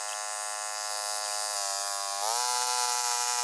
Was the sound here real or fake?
real